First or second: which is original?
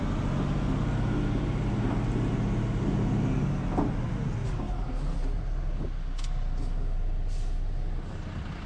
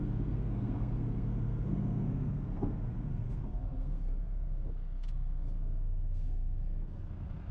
first